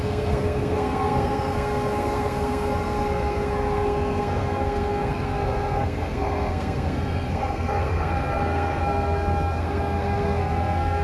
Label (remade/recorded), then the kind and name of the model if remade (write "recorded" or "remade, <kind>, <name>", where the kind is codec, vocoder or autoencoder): remade, codec, SNAC